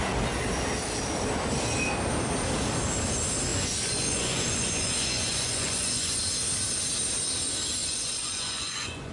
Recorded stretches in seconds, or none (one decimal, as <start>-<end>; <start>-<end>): 0.0-3.5; 6.2-7.8

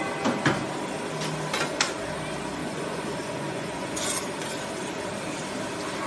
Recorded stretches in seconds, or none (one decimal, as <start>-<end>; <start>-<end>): 0.0-2.6; 4.1-6.1

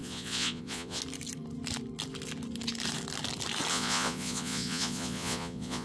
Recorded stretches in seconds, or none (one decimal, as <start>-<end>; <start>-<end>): 1.0-3.7

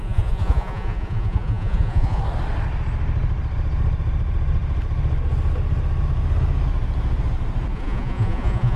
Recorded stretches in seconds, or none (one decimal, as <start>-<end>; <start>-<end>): 2.2-7.7

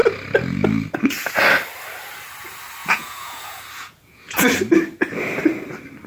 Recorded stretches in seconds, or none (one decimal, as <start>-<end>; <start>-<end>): 0.0-2.8; 4.5-6.1

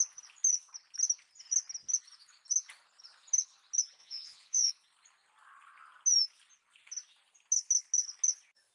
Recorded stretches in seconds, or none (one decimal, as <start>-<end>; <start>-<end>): 0.0-4.0; 4.7-8.7

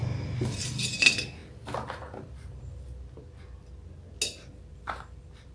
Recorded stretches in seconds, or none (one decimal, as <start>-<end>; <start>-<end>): 0.0-5.5

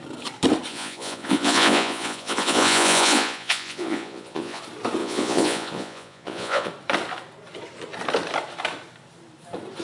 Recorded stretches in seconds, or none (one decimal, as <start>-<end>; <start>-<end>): 0.0-0.7; 4.6-5.0; 6.7-9.8